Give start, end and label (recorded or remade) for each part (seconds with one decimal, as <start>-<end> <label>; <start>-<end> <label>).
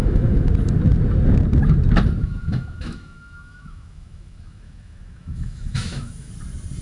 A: 0.0-0.5 remade; 0.5-2.2 recorded; 2.2-6.3 remade; 6.3-6.8 recorded